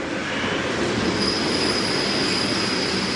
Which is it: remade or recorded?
recorded